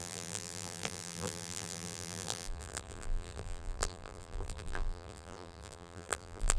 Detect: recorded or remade remade